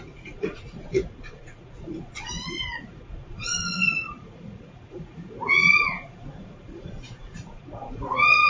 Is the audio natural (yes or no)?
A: no